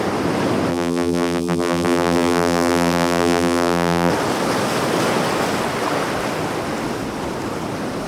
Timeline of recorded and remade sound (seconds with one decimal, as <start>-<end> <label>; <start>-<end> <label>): 0.0-0.7 recorded; 0.7-4.1 remade; 4.1-8.1 recorded